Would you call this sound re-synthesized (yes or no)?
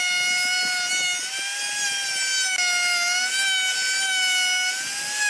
no